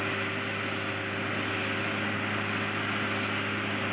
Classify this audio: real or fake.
real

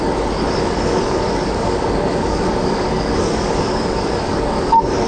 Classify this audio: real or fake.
fake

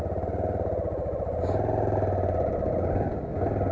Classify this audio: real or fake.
real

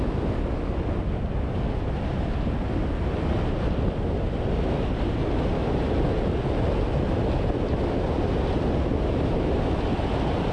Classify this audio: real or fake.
real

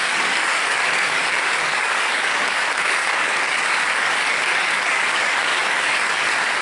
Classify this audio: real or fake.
fake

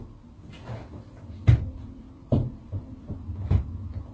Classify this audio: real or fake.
real